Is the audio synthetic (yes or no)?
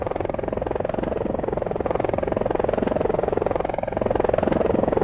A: no